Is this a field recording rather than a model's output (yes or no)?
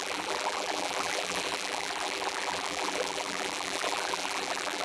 no